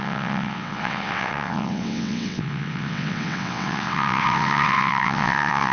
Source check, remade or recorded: remade